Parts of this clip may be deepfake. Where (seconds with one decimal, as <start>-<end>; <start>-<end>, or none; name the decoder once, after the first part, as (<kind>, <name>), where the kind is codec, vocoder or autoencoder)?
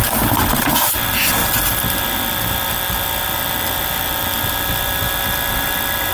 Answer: none